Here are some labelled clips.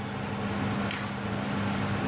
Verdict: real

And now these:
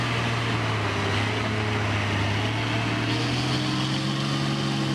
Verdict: real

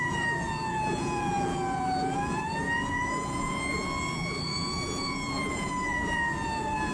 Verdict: fake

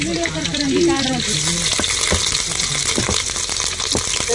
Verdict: real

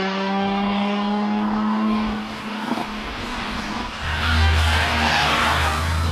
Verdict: fake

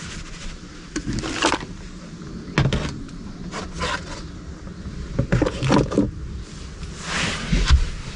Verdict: real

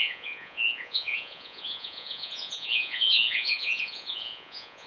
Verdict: fake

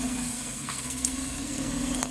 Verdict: fake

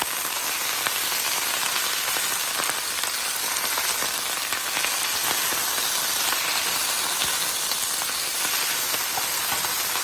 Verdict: real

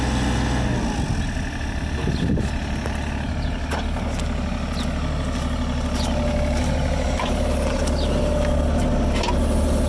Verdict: real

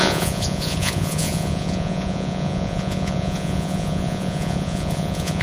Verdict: fake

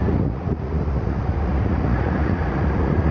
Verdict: fake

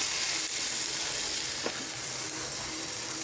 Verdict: fake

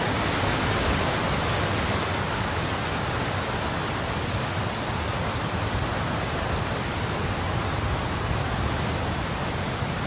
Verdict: real